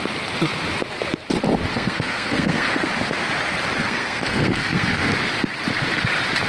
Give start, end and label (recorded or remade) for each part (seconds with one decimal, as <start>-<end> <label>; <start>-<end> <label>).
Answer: 0.0-1.7 recorded; 1.7-2.9 remade; 2.9-3.8 recorded; 3.8-5.1 remade; 5.1-6.5 recorded